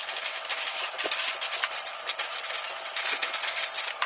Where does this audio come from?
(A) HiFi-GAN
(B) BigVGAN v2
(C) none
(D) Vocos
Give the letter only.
C